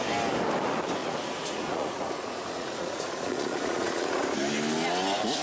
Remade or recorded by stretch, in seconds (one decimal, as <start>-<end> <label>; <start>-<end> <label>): 0.0-1.0 recorded; 1.0-4.2 remade; 4.2-5.4 recorded